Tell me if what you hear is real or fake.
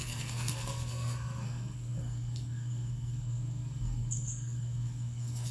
fake